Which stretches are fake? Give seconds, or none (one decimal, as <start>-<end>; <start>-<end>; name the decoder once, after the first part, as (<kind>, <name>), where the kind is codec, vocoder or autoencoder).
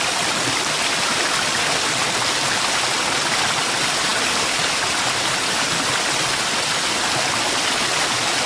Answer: none